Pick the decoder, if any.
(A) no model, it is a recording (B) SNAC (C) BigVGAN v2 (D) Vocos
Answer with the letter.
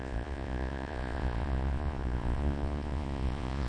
D